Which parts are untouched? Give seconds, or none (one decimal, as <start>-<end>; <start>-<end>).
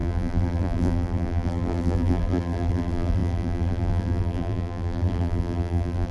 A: none